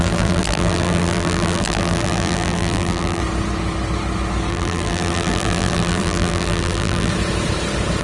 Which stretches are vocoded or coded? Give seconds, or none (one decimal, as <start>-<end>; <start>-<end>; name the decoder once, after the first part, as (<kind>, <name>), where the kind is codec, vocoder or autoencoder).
0.0-3.2 (vocoder, BigVGAN v2); 4.5-7.1